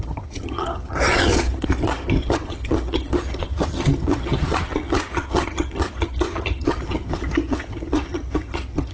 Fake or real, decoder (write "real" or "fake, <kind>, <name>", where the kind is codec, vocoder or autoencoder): fake, vocoder, HiFi-GAN